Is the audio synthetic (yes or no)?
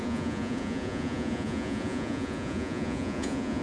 yes